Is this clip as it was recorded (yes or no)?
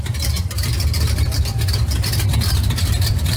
no